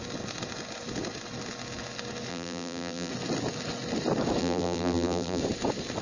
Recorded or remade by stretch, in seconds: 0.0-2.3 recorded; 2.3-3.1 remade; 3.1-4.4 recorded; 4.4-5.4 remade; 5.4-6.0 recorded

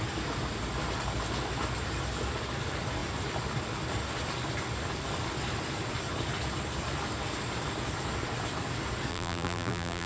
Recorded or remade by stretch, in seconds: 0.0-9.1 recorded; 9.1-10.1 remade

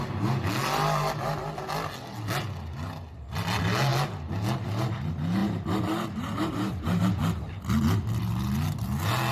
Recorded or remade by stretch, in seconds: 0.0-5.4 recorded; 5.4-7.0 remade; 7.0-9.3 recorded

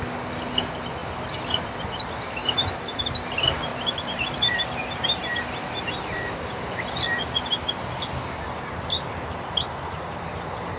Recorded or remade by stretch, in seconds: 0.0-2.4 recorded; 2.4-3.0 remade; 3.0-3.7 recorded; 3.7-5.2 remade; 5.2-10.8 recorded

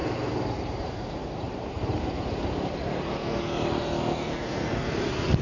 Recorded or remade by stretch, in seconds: 0.0-2.0 remade; 2.0-5.4 recorded

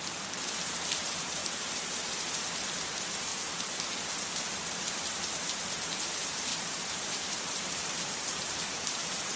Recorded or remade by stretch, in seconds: 0.0-3.3 remade; 3.3-5.1 recorded; 5.1-9.4 remade

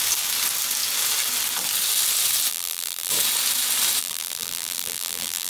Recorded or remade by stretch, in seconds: 0.0-2.5 recorded; 2.5-3.1 remade; 3.1-4.0 recorded; 4.0-5.5 remade